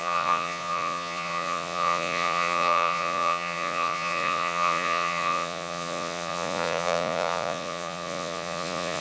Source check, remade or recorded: remade